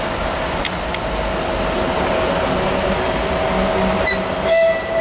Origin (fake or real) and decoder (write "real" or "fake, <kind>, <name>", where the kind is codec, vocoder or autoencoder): real